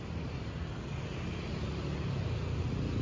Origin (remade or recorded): recorded